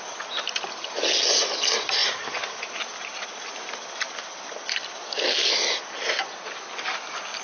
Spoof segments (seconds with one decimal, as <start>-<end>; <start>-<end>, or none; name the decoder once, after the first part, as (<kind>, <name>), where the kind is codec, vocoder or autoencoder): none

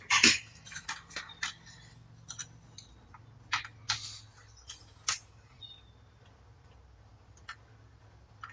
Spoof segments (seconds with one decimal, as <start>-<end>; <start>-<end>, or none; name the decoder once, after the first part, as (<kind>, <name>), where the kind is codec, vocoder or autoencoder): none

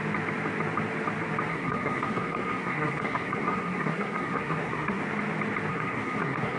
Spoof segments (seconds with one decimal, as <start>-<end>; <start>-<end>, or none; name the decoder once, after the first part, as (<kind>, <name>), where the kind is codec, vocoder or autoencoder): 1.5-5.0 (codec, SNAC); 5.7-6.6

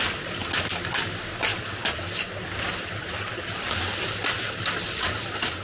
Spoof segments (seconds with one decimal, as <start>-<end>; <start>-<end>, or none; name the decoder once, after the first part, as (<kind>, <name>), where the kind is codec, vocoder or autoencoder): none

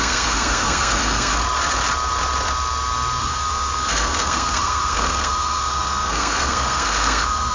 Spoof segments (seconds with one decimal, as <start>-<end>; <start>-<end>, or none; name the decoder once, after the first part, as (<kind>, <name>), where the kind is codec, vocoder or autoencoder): 0.0-1.3 (codec, SNAC); 3.2-7.5